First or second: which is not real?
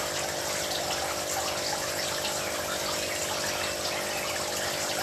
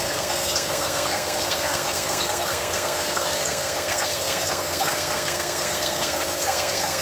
second